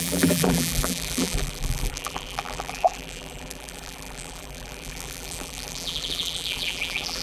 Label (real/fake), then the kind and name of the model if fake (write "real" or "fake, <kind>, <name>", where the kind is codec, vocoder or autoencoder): fake, vocoder, BigVGAN v2